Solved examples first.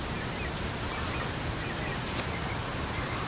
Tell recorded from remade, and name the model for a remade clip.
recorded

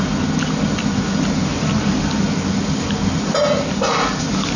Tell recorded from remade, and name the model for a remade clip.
recorded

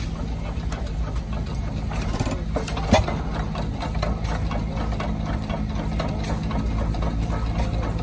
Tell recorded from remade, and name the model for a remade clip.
recorded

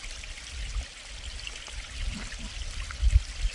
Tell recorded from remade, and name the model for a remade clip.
recorded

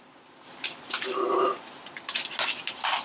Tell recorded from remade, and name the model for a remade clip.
recorded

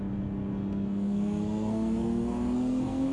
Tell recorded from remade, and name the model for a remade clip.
remade, codec, SNAC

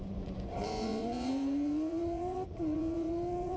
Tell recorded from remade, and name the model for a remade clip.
remade, vocoder, Vocos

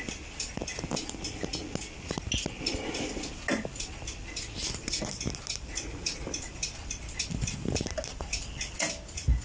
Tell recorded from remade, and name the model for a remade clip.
recorded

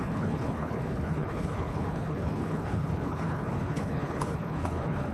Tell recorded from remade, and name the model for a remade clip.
remade, codec, HILCodec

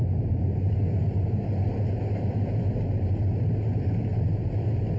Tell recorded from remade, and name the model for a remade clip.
recorded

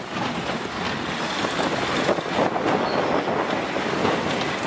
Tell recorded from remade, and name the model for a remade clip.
recorded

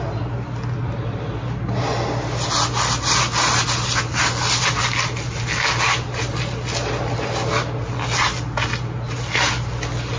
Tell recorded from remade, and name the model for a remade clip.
recorded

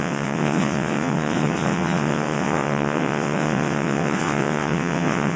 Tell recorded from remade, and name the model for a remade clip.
remade, vocoder, WaveNeXt